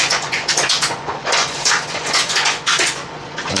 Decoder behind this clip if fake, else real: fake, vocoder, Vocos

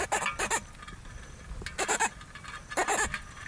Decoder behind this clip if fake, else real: real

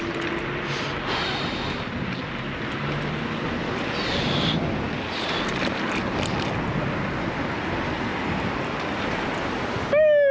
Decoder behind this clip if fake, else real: real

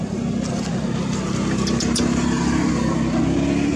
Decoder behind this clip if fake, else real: real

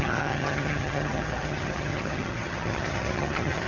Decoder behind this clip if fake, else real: fake, vocoder, HiFi-GAN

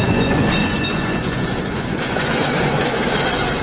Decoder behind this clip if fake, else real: fake, vocoder, Vocos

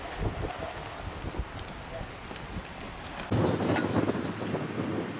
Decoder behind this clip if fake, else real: real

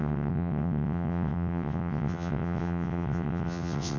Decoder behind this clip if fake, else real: fake, vocoder, WaveNeXt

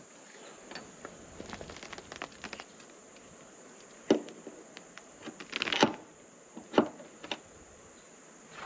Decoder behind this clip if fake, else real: real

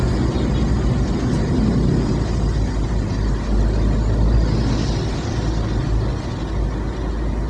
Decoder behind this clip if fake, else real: real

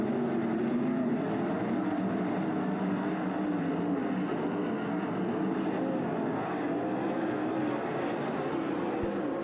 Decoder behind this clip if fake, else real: real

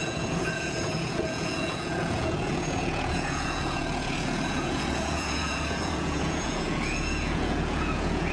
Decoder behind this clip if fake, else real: fake, vocoder, Vocos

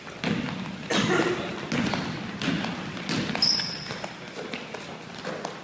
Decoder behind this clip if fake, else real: real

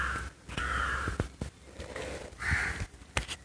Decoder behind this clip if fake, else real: real